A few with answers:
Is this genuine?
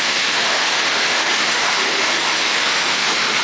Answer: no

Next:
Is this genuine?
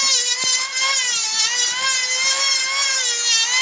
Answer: yes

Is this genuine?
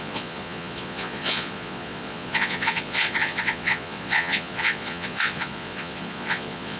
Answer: no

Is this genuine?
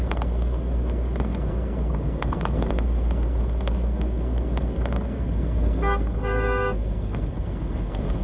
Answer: no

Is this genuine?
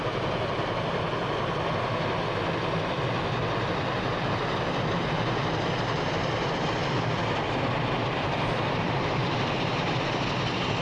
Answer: yes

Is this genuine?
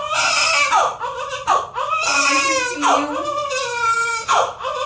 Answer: yes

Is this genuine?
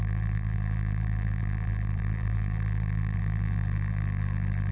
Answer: no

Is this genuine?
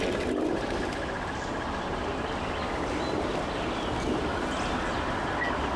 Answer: yes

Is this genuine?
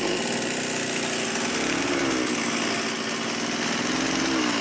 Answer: yes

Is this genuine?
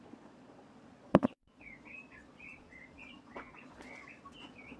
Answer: no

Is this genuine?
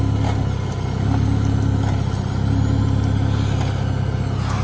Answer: yes